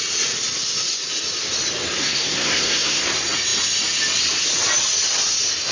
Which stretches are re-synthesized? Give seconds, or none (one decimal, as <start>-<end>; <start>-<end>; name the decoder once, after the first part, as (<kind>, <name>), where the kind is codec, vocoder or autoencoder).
2.0-3.0 (codec, SNAC)